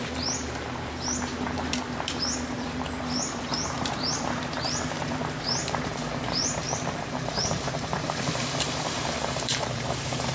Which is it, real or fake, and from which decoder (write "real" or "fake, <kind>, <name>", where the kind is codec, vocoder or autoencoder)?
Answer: fake, vocoder, BigVGAN v2